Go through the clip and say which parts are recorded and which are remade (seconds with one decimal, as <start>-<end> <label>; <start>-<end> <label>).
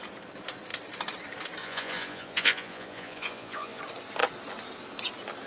0.0-1.6 recorded; 1.6-3.8 remade; 3.8-5.5 recorded